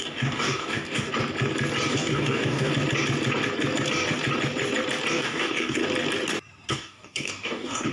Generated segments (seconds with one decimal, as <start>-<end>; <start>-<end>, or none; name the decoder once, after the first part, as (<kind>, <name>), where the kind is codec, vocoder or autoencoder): 0.0-1.1 (codec, DAC); 1.9-2.7; 5.1-5.8; 6.7-7.9